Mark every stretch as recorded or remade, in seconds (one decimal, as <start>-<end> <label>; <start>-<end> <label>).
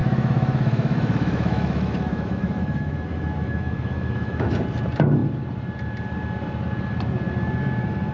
0.0-4.6 remade; 4.6-8.1 recorded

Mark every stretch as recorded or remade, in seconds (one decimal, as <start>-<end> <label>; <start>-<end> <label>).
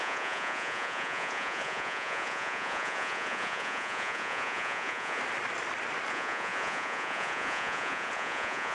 0.0-5.2 remade; 5.2-6.1 recorded; 6.1-8.7 remade